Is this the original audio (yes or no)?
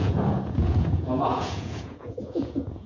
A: no